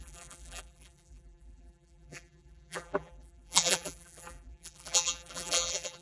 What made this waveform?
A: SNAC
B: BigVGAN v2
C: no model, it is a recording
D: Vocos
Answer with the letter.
B